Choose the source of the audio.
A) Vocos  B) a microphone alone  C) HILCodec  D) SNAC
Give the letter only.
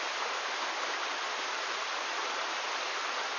B